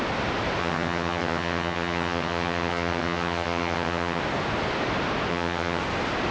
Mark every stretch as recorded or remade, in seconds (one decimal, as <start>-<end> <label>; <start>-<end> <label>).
0.0-0.6 recorded; 0.6-4.2 remade; 4.2-5.3 recorded; 5.3-5.8 remade; 5.8-6.3 recorded